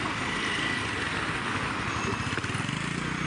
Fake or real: real